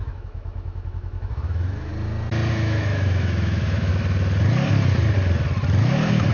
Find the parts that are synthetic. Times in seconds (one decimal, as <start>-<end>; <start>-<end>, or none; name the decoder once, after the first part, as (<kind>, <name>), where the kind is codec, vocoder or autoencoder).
0.0-1.9 (autoencoder, DAC-VAE); 2.5-3.9